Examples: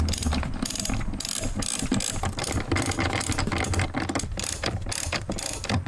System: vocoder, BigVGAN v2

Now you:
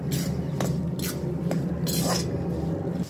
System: none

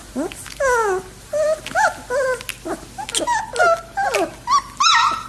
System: none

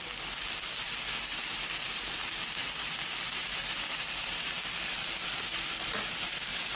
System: none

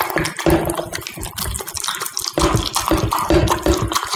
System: none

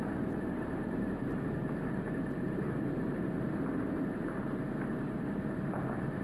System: vocoder, BigVGAN v2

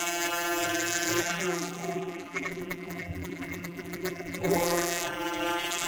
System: vocoder, BigVGAN v2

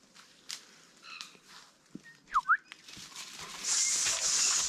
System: none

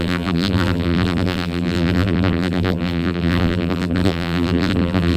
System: vocoder, BigVGAN v2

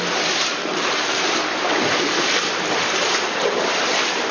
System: vocoder, BigVGAN v2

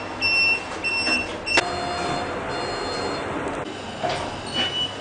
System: none